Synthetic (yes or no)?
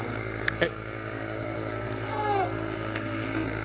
yes